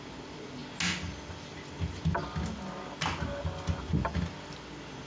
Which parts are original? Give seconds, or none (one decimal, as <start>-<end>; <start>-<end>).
0.0-5.1